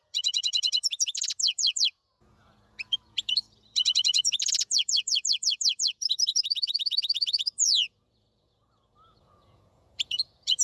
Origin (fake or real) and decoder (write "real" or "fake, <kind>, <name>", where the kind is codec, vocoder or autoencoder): fake, vocoder, Vocos